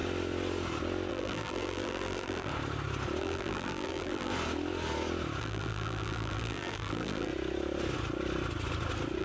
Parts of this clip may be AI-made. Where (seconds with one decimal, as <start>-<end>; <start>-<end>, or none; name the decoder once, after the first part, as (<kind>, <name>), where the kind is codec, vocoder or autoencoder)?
1.1-2.5 (vocoder, BigVGAN v2); 3.2-4.3; 5.4-7.3